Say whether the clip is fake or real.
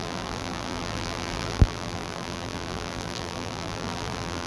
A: fake